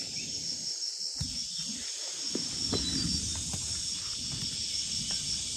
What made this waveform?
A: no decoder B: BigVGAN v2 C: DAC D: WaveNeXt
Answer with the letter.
A